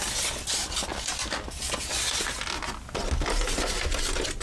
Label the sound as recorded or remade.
recorded